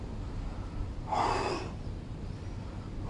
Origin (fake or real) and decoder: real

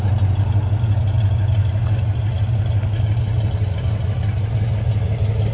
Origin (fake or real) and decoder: real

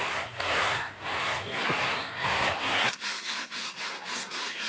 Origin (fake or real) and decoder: fake, codec, SNAC